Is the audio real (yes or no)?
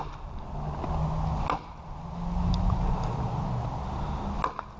yes